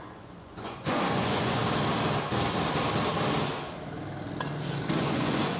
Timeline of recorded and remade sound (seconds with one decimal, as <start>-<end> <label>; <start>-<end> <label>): 0.0-1.6 remade; 1.6-5.0 recorded; 5.0-5.6 remade